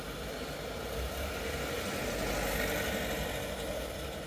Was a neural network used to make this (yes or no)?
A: no